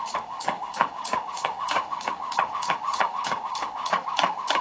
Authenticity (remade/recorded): remade